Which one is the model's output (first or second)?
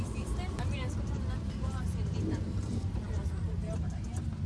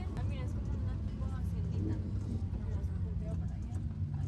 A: first